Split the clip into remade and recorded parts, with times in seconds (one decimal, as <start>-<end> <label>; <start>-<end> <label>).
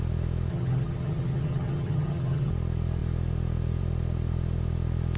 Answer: 0.0-0.5 recorded; 0.5-2.5 remade; 2.5-5.2 recorded